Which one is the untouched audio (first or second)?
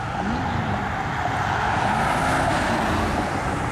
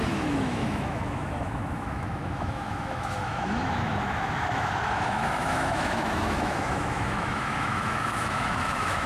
first